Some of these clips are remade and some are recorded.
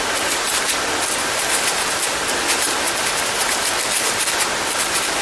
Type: recorded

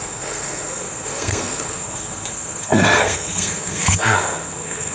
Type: remade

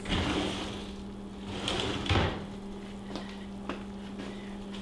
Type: recorded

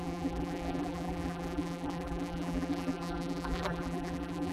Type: remade